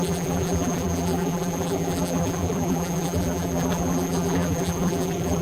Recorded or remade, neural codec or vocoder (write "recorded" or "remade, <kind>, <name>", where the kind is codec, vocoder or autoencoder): remade, vocoder, BigVGAN v2